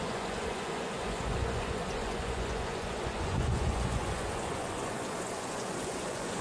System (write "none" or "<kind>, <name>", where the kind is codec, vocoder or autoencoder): vocoder, Vocos